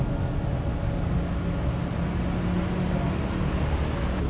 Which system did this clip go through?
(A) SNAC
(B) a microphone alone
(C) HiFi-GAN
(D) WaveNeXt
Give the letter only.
B